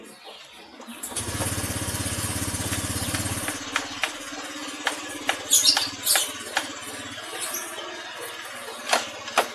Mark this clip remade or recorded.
recorded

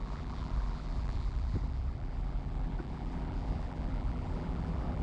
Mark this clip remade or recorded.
remade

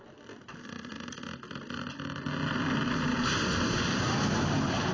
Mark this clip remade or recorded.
recorded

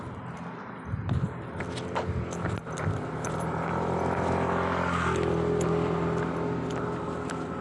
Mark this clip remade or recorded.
recorded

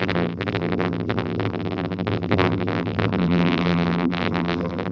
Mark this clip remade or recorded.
remade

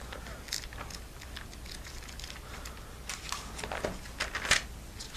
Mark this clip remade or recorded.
recorded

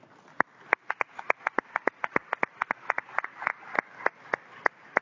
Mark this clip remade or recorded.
recorded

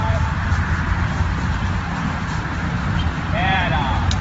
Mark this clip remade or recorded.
remade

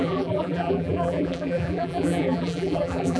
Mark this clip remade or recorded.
remade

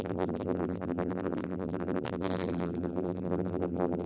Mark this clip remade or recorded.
remade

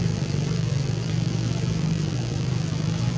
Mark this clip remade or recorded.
remade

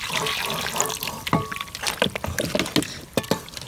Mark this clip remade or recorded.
recorded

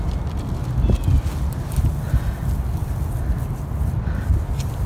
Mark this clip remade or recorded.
recorded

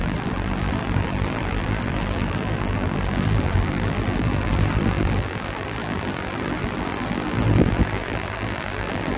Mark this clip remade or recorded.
remade